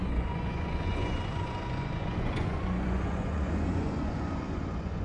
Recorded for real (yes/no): no